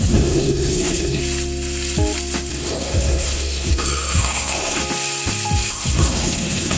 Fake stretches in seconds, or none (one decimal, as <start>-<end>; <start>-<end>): 0.0-1.2; 2.5-4.8; 5.7-6.8